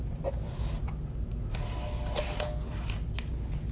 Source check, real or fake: real